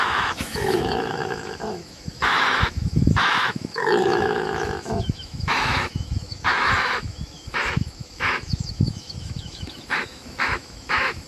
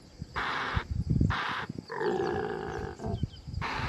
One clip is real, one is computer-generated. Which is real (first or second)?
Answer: second